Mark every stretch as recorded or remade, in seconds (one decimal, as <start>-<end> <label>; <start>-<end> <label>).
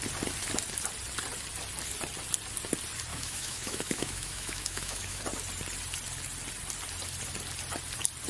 0.0-3.1 recorded; 3.1-5.2 remade; 5.2-8.3 recorded